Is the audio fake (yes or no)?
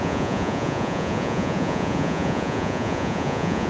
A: yes